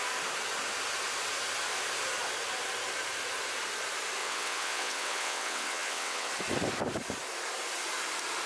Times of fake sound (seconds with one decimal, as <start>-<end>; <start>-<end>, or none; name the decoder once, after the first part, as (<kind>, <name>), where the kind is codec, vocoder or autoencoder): 4.2-6.3 (vocoder, WaveNeXt)